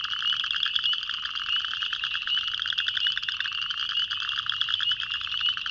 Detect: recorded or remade recorded